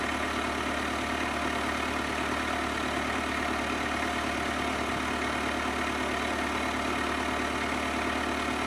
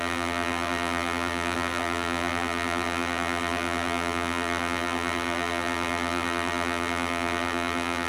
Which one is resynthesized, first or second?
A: second